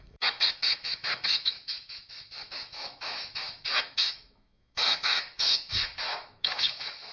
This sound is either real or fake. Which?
fake